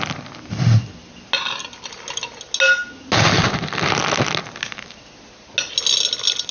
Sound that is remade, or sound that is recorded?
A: recorded